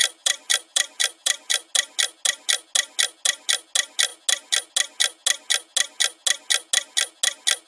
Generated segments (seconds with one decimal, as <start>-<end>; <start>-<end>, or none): 0.0-1.7